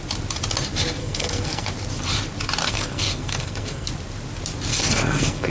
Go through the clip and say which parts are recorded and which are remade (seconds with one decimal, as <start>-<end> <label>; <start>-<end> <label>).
0.0-1.0 recorded; 1.0-1.7 remade; 1.7-2.6 recorded; 2.6-3.9 remade; 3.9-4.7 recorded; 4.7-5.5 remade